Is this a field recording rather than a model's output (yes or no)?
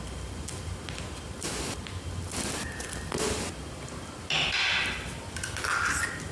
yes